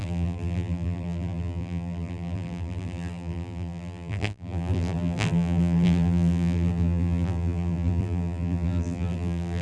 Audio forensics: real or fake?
fake